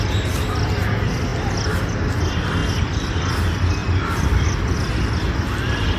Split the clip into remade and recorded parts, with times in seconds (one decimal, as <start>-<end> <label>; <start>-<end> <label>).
0.0-6.0 recorded